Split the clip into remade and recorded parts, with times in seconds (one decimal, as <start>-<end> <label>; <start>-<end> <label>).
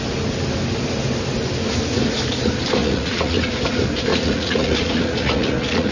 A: 0.0-2.8 recorded; 2.8-3.5 remade; 3.5-4.1 recorded; 4.1-5.9 remade